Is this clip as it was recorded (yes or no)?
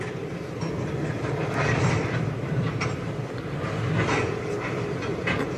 no